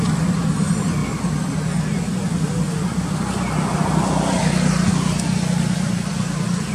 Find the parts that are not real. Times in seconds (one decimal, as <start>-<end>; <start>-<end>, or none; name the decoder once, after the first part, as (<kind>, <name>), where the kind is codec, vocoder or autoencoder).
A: none